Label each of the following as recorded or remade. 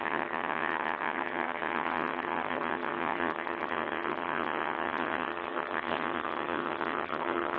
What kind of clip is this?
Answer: remade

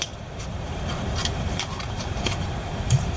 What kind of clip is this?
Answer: remade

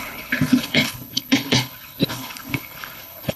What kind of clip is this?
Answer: remade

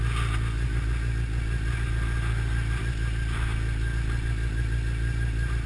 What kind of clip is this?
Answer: recorded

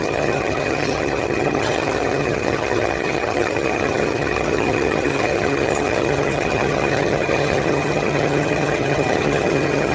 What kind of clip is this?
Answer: remade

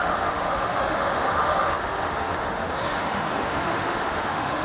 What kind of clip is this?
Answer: remade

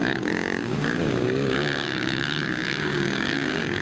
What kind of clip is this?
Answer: remade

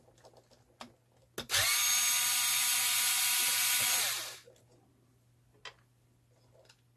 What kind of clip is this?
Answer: recorded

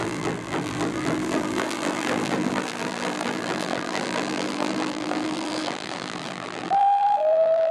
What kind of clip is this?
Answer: remade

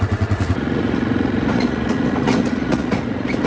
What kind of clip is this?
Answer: remade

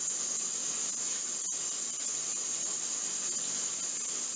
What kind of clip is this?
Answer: recorded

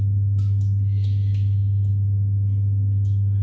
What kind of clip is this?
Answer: remade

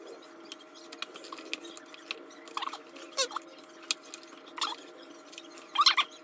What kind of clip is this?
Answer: recorded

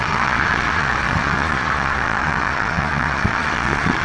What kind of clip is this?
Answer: remade